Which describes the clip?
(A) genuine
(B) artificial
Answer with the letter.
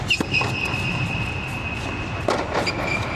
A